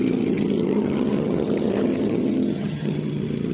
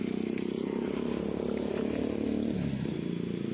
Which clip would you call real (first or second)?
second